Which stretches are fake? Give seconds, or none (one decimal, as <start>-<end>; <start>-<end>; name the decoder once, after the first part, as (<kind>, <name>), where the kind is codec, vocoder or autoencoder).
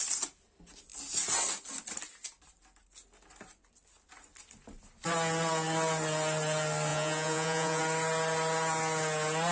6.9-7.8 (vocoder, Vocos)